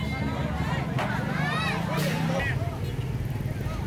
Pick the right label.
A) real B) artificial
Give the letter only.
A